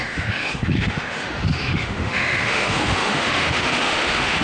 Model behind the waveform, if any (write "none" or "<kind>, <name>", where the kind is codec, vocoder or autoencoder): autoencoder, DAC-VAE